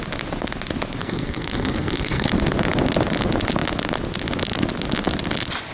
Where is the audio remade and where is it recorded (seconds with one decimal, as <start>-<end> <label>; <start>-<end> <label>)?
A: 0.0-1.0 recorded; 1.0-2.3 remade; 2.3-5.7 recorded